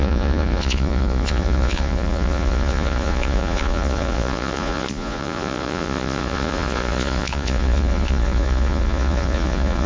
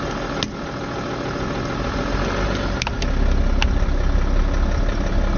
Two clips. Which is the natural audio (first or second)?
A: second